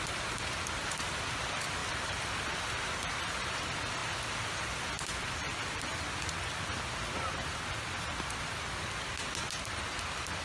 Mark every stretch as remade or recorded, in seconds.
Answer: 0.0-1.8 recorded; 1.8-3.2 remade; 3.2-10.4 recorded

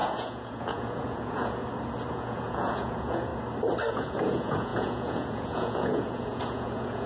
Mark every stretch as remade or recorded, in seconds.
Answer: 0.0-1.6 remade; 1.6-2.1 recorded; 2.1-3.3 remade; 3.3-3.9 recorded; 3.9-7.1 remade

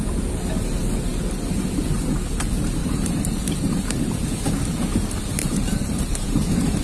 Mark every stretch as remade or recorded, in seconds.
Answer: 0.0-2.8 recorded; 2.8-3.9 remade; 3.9-5.4 recorded; 5.4-6.8 remade

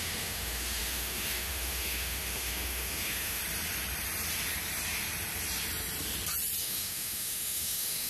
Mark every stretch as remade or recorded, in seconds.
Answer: 0.0-3.4 remade; 3.4-6.6 recorded; 6.6-8.1 remade

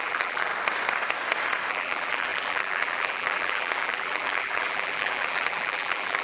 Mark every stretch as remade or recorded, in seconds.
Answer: 0.0-0.5 remade; 0.5-1.7 recorded; 1.7-6.2 remade

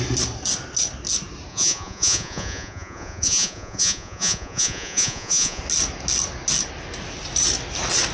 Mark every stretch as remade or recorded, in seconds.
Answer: 0.0-1.5 recorded; 1.5-5.6 remade; 5.6-8.1 recorded

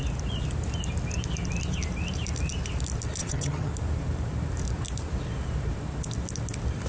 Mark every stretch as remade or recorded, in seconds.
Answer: 0.0-3.2 recorded; 3.2-3.7 remade; 3.7-6.9 recorded